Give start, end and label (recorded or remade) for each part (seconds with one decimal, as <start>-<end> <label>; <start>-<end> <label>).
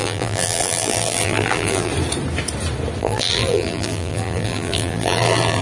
0.0-1.9 remade; 1.9-3.0 recorded; 3.0-5.6 remade